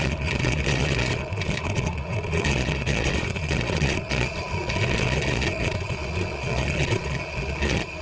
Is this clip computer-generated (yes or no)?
yes